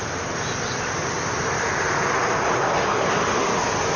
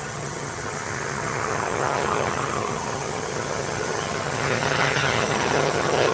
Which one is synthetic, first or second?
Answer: second